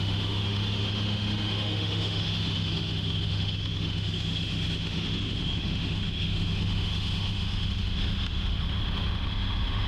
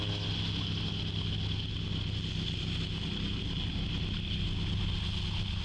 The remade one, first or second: first